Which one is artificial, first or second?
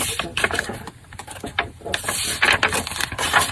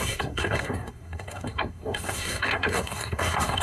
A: second